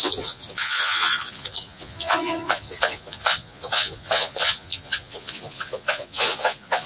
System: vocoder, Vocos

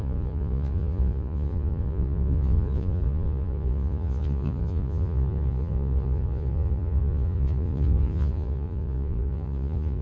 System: vocoder, Vocos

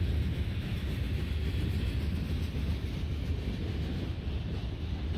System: none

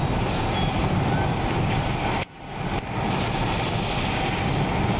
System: none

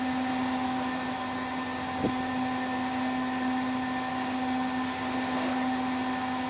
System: none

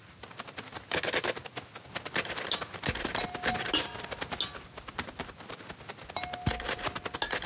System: none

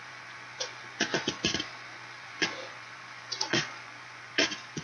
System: vocoder, Vocos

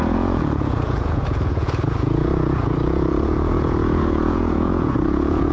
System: vocoder, Vocos